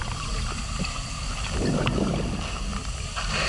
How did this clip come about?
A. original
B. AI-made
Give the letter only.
A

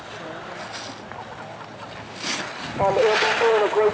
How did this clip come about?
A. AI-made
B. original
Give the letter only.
B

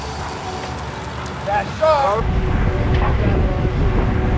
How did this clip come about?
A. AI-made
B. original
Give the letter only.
B